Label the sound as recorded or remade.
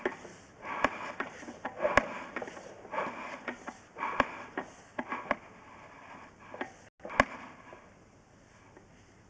recorded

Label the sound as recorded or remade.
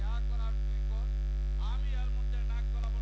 recorded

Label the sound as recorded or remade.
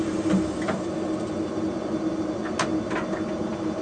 recorded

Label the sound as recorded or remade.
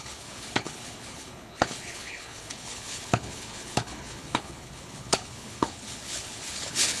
remade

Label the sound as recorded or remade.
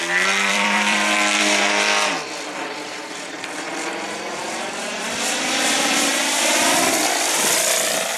remade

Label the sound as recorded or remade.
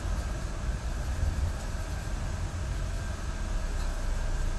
recorded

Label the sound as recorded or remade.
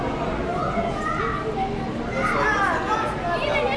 recorded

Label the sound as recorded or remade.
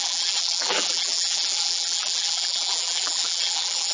remade